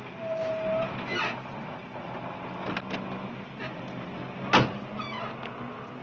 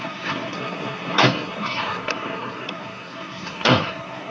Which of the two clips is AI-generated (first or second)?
second